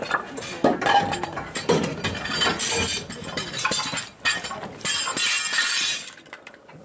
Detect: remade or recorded recorded